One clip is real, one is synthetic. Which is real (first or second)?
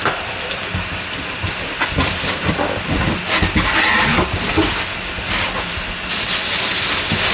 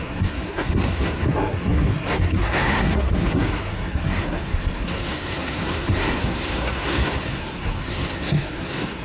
first